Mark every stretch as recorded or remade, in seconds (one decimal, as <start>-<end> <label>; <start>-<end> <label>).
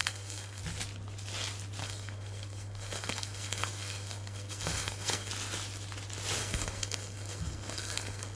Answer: 0.0-0.6 remade; 0.6-1.8 recorded; 1.8-5.3 remade; 5.3-6.4 recorded; 6.4-8.4 remade